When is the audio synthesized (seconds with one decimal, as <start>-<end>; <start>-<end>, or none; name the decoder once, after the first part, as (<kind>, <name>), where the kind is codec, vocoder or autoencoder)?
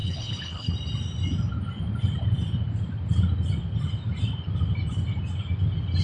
0.0-0.7 (codec, HILCodec)